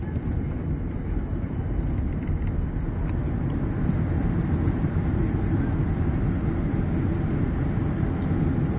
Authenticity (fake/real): real